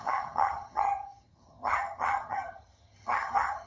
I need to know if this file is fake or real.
fake